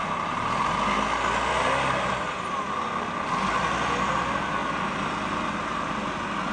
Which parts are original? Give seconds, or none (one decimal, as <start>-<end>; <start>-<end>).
0.0-6.5